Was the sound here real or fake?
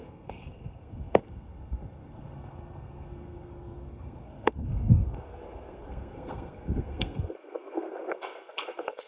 fake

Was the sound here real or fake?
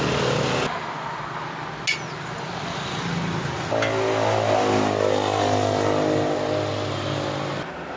real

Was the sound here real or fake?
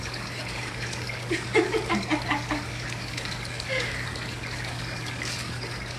fake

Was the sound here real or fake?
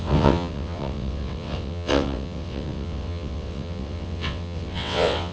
fake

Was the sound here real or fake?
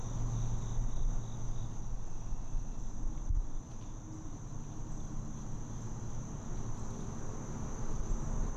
real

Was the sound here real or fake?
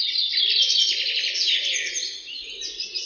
real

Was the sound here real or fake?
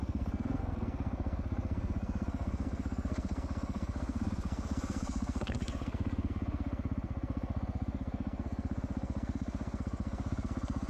fake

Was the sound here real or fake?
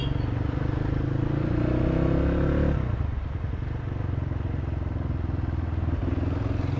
real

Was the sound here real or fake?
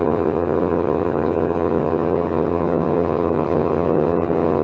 fake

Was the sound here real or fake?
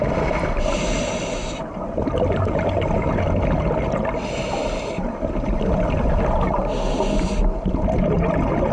real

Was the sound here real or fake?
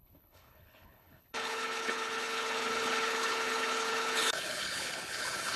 fake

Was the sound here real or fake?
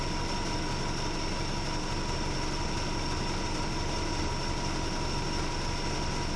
real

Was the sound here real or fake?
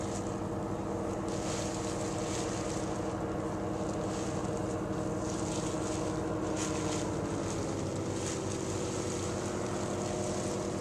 real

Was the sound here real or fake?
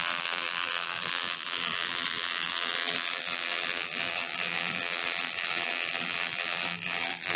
fake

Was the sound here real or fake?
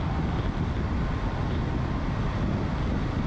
real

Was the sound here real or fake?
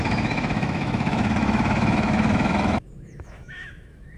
fake